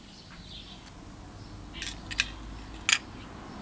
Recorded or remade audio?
recorded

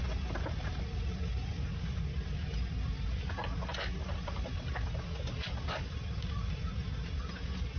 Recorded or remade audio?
recorded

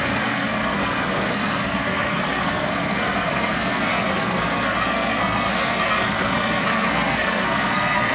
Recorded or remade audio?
remade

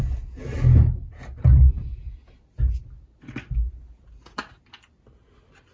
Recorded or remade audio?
recorded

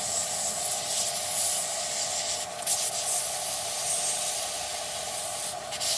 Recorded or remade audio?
recorded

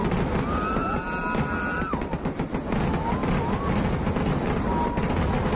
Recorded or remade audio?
recorded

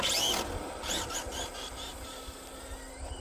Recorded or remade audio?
recorded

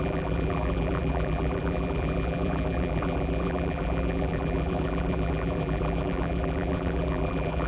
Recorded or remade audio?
remade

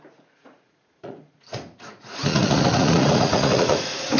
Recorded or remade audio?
remade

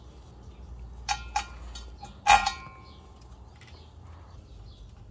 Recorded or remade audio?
recorded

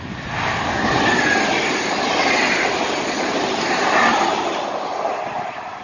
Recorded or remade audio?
recorded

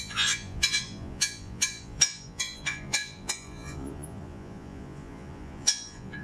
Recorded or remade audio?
remade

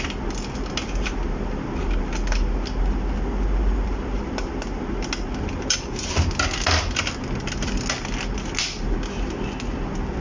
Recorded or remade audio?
recorded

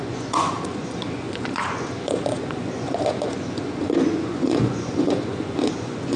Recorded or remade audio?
remade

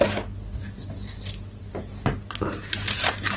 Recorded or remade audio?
recorded